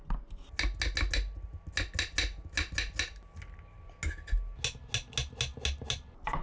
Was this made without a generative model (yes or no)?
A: yes